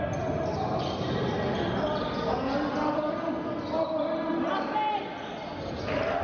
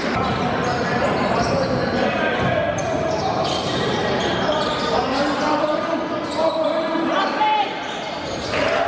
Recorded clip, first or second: first